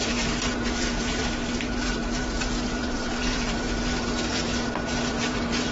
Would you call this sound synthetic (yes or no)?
yes